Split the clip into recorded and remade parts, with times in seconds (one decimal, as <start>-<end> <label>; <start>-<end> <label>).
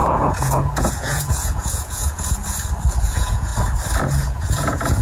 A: 0.0-2.4 remade; 2.4-3.0 recorded; 3.0-3.5 remade; 3.5-4.1 recorded; 4.1-5.0 remade